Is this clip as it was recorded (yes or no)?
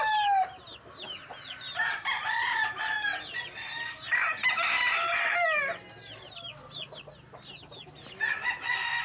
yes